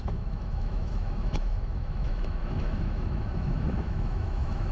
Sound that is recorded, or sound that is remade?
remade